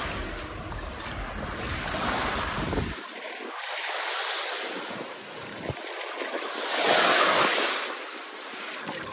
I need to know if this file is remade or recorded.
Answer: recorded